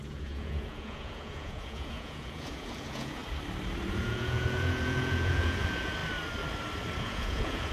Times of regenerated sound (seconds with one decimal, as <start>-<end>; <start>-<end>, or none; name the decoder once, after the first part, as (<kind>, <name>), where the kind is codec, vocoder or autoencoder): 0.0-3.2 (vocoder, Vocos); 3.9-6.0; 7.0-7.7